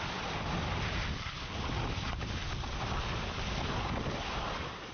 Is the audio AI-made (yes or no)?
no